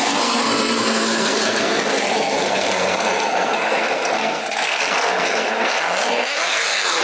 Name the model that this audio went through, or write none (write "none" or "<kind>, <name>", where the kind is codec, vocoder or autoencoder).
codec, SNAC